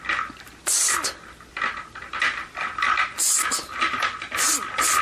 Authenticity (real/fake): real